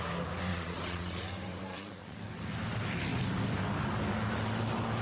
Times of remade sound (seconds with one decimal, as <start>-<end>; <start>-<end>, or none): 0.5-1.2; 1.7-2.2